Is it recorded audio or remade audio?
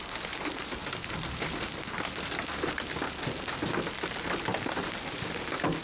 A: recorded